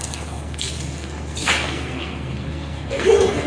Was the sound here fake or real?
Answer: fake